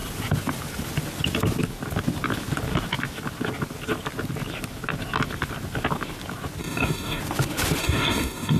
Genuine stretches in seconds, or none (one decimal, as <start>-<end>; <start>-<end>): 0.0-6.6; 7.2-7.8